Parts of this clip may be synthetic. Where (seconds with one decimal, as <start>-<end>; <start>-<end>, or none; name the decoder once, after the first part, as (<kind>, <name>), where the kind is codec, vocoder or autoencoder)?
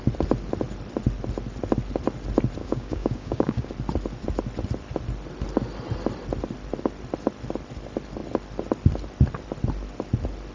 2.6-3.7 (codec, DAC)